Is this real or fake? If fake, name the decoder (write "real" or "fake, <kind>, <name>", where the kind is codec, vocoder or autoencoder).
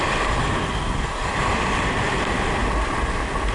real